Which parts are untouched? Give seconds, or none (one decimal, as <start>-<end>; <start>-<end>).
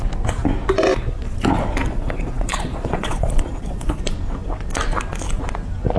0.0-1.8; 4.0-6.0